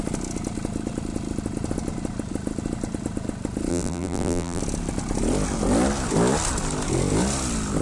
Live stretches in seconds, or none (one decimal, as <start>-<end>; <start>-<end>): 0.0-3.7; 4.6-7.8

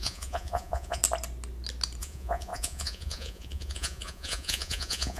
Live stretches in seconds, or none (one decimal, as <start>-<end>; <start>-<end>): 1.0-2.0

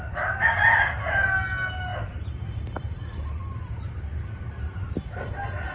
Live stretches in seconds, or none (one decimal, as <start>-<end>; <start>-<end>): 0.0-1.9; 5.3-5.7

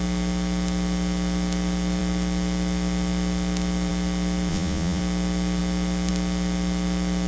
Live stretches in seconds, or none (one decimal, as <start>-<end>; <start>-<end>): 0.0-4.5; 5.0-7.3

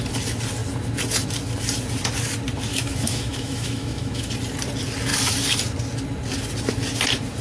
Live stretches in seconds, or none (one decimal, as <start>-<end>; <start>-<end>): 0.0-2.7; 4.3-7.4

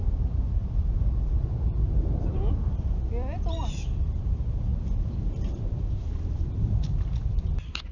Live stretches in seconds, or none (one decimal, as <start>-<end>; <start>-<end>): 0.6-2.5